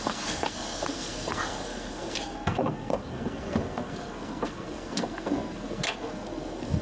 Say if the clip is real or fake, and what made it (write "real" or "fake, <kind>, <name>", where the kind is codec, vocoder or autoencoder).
fake, codec, SNAC